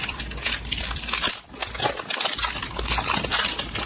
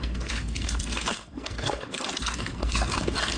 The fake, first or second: second